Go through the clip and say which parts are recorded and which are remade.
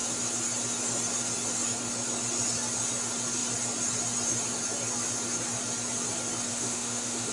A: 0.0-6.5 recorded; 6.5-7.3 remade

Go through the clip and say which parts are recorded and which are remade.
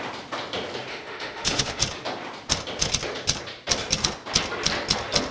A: 0.0-0.9 recorded; 0.9-1.8 remade; 1.8-5.3 recorded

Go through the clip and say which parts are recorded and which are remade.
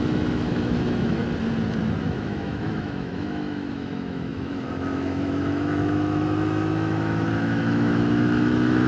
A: 0.0-1.2 remade; 1.2-2.0 recorded; 2.0-8.9 remade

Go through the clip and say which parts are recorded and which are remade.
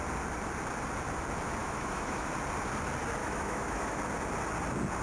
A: 0.0-1.6 recorded; 1.6-2.3 remade; 2.3-3.2 recorded; 3.2-4.0 remade; 4.0-5.0 recorded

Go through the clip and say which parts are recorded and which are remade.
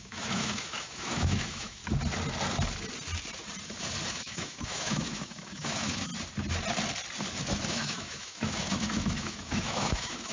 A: 0.0-1.8 remade; 1.8-4.1 recorded; 4.1-6.1 remade; 6.1-7.7 recorded; 7.7-10.3 remade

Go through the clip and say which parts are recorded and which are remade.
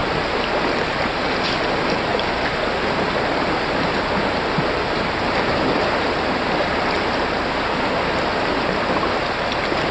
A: 0.0-9.9 recorded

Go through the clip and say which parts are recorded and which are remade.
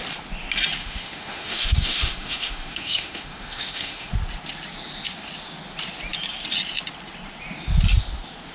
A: 0.0-0.8 recorded; 0.8-4.1 remade; 4.1-8.5 recorded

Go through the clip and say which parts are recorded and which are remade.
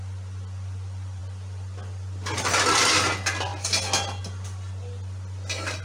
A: 0.0-5.8 recorded